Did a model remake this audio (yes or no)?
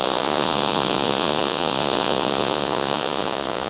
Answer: yes